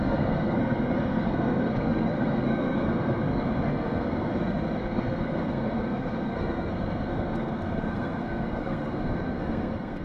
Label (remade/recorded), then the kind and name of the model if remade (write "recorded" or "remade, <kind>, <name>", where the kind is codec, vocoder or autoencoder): remade, codec, SNAC